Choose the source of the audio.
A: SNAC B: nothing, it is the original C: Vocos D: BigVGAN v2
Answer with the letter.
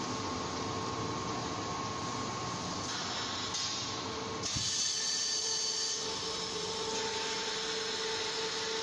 B